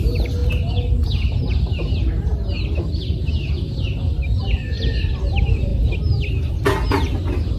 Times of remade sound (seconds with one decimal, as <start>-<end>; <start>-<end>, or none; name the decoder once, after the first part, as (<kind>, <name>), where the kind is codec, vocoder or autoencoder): none

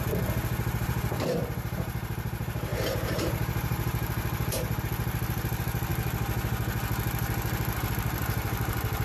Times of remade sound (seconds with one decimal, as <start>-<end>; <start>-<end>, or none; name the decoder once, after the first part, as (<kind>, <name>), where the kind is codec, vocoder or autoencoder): 0.8-5.9 (vocoder, BigVGAN v2); 7.9-9.0

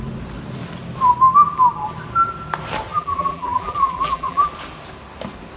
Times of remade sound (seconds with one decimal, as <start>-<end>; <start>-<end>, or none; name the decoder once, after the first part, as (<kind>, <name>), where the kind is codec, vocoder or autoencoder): 2.9-4.5 (vocoder, BigVGAN v2)

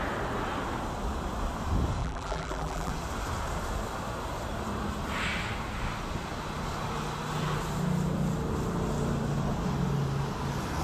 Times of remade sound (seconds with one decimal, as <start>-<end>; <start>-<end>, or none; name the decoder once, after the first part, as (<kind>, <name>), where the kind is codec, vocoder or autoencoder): 2.0-2.9 (vocoder, BigVGAN v2)

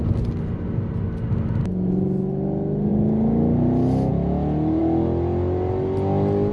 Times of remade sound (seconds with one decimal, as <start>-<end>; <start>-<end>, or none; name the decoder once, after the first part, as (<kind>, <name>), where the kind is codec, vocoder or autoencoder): none

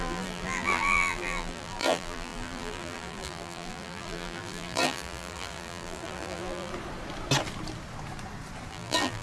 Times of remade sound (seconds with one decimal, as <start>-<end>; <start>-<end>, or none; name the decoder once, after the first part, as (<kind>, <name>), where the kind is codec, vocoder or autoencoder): 0.0-6.7 (vocoder, BigVGAN v2); 8.7-9.2